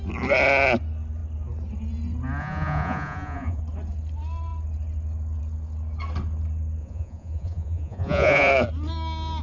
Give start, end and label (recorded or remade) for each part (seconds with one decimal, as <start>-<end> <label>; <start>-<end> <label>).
0.0-2.4 recorded; 2.4-3.6 remade; 3.6-6.8 recorded; 6.8-8.5 remade; 8.5-9.4 recorded